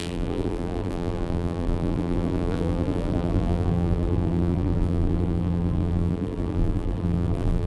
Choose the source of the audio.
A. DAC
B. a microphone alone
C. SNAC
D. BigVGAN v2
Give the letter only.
D